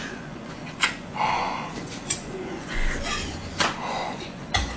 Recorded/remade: remade